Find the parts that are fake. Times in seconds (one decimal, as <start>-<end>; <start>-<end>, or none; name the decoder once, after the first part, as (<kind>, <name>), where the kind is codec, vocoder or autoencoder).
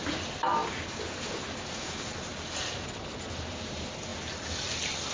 none